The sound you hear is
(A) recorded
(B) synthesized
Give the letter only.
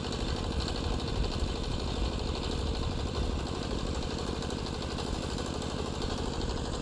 A